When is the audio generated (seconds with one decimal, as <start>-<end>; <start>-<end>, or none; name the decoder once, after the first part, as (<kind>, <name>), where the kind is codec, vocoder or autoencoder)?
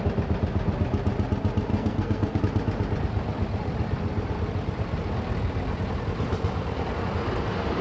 1.7-2.4 (codec, SNAC)